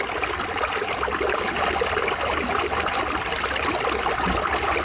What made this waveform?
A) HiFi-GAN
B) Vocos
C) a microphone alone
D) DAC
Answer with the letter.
C